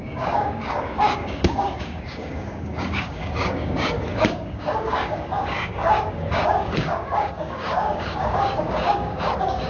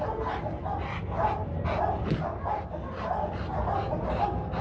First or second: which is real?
second